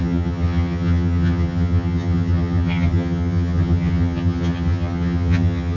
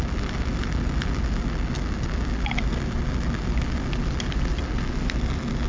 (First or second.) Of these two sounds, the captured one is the second